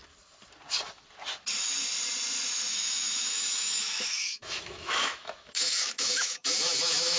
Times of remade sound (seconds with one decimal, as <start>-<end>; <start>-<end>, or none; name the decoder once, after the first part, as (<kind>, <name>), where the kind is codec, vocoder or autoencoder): 2.7-7.2 (autoencoder, DAC-VAE)